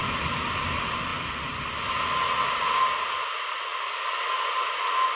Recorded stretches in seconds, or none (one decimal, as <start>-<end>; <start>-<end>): 0.0-5.2

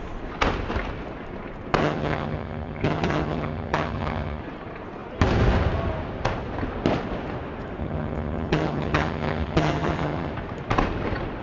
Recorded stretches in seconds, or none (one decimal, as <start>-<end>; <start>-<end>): 0.0-1.8; 4.4-7.8; 10.3-11.4

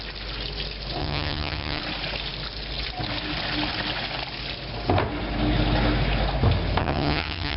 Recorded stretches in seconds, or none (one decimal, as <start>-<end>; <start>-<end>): 0.0-1.0; 1.8-6.8